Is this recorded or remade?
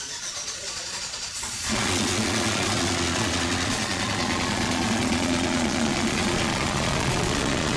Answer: remade